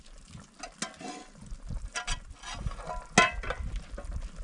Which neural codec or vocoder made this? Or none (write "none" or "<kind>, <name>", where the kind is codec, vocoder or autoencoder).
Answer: none